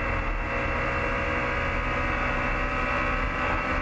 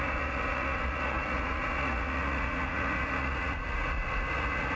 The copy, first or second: second